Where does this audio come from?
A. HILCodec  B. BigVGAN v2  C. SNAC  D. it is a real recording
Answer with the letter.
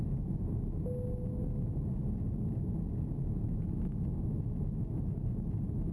D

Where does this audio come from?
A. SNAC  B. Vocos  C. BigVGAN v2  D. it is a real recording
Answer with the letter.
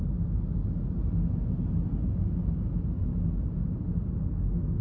D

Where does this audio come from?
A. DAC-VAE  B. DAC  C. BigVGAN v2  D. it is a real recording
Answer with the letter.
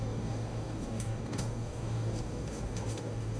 B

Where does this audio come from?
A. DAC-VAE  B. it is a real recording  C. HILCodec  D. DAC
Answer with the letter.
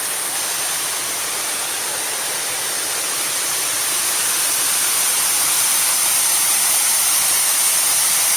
B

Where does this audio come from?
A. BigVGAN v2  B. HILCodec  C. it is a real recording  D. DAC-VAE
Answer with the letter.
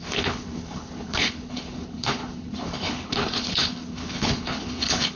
B